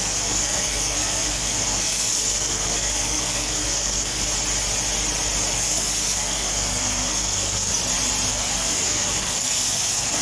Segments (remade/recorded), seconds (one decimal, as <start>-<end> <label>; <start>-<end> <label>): 0.0-4.3 remade; 4.3-5.5 recorded; 5.5-7.7 remade; 7.7-8.3 recorded; 8.3-10.2 remade